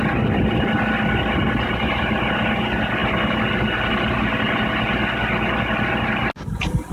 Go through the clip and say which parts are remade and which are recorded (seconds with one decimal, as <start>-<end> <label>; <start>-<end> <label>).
0.0-3.0 recorded; 3.0-4.3 remade; 4.3-6.9 recorded